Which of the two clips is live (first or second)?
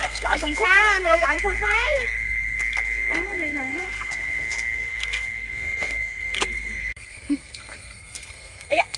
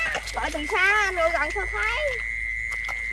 second